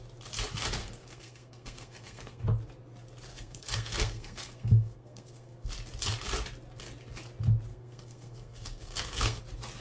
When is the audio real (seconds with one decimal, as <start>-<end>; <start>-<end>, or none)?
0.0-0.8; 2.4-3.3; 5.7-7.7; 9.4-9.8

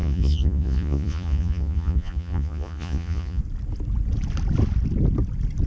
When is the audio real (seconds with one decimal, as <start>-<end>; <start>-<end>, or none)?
3.4-5.7

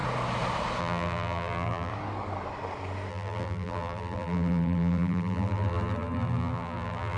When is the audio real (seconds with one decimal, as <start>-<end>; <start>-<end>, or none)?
0.0-0.8; 1.9-3.1

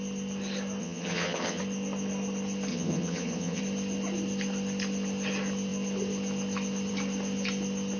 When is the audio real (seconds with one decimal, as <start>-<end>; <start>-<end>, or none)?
0.0-0.8; 1.6-2.7; 3.6-8.0

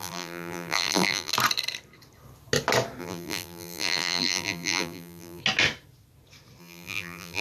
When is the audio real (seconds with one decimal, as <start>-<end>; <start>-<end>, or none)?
1.3-3.0; 5.4-6.6

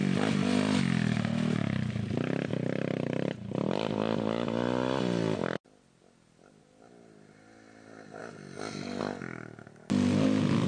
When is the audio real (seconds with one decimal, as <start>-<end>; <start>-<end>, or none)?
0.0-10.7